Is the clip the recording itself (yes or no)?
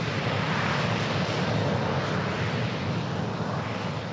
yes